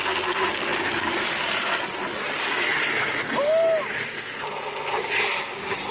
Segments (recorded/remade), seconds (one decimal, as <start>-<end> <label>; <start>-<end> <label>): 0.0-5.9 recorded